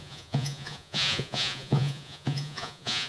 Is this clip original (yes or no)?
no